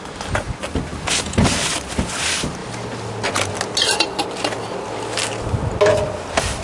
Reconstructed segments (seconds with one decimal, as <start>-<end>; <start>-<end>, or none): none